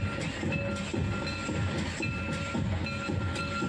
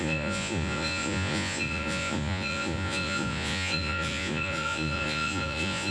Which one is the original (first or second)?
first